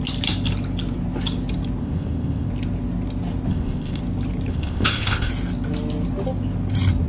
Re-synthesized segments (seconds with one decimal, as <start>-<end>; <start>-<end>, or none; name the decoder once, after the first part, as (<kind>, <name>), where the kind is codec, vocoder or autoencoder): 1.8-2.5 (codec, ZipCodec); 3.5-4.0; 4.5-5.3